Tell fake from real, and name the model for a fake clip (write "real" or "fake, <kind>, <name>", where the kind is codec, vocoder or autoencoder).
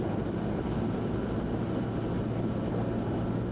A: real